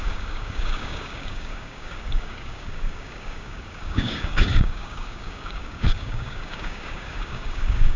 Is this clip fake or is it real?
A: fake